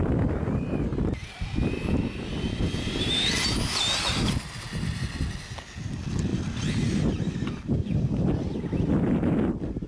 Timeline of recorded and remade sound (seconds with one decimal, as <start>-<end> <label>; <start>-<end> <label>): 0.0-9.9 recorded